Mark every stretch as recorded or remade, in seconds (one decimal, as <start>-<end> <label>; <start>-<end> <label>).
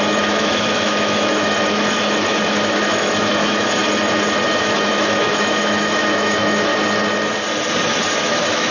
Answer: 0.0-3.8 remade; 3.8-4.6 recorded; 4.6-6.7 remade; 6.7-8.2 recorded; 8.2-8.7 remade